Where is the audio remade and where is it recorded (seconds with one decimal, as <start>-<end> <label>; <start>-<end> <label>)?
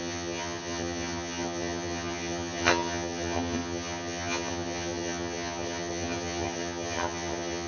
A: 0.0-7.7 remade